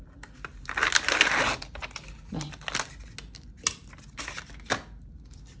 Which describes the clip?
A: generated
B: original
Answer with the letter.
B